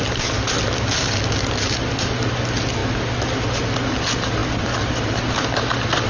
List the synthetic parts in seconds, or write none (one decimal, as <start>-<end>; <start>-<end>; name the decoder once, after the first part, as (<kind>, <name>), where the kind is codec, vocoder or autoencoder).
none